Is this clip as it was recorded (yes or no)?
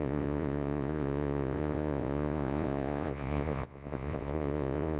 no